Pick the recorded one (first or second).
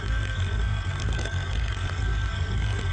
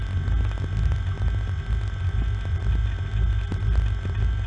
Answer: second